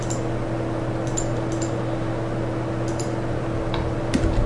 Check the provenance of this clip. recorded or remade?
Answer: recorded